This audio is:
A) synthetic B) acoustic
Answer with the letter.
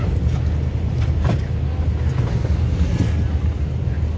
B